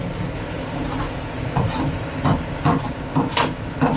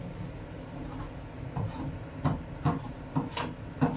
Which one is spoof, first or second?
first